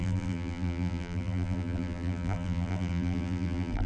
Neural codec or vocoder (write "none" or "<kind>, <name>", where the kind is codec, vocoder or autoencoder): vocoder, BigVGAN v2